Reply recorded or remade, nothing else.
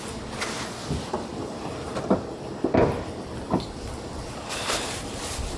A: recorded